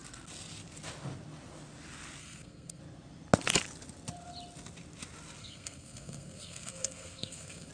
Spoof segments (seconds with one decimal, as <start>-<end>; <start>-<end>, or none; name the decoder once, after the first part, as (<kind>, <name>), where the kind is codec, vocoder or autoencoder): 2.2-2.8 (codec, SNAC); 5.4-7.7

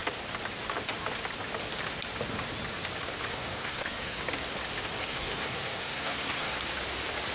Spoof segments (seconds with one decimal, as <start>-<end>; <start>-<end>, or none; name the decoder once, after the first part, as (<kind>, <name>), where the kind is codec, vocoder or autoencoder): 3.3-4.2 (codec, SNAC); 5.0-6.6

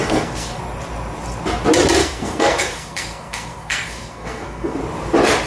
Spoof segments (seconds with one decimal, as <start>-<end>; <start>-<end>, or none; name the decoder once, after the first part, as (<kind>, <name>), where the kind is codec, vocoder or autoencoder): 0.0-0.6 (codec, SNAC); 2.0-4.8